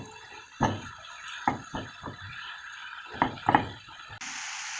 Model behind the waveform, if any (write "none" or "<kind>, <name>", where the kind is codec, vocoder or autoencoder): none